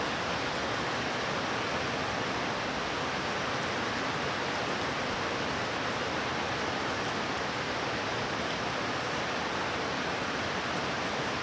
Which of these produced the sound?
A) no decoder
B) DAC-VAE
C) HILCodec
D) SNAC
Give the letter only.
A